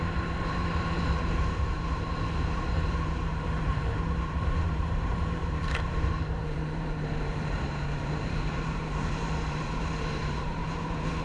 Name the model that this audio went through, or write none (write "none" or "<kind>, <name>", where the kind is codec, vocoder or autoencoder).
vocoder, BigVGAN v2